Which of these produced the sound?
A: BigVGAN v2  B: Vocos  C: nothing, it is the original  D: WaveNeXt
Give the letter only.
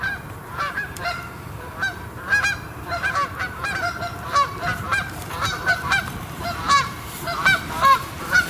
A